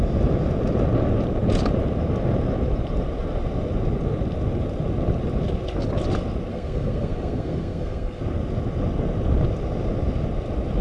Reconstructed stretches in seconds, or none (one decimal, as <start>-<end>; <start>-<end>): 6.5-8.2